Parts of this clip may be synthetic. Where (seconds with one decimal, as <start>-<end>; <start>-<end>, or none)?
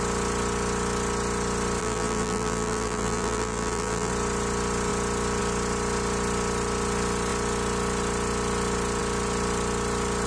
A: 1.8-4.1